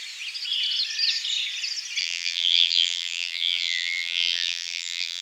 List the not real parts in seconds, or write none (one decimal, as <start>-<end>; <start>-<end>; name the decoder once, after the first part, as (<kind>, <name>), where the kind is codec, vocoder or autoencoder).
2.0-5.2 (vocoder, BigVGAN v2)

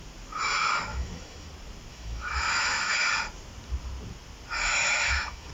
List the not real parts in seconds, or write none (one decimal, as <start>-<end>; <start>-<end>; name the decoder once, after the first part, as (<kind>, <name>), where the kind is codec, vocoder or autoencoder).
0.9-1.5 (autoencoder, DAC-VAE); 1.9-2.9; 4.7-5.5

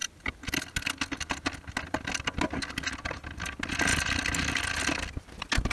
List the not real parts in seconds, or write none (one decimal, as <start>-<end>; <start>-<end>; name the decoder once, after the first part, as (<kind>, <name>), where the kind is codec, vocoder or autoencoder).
none